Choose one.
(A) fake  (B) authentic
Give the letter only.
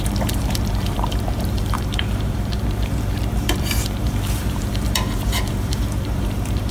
A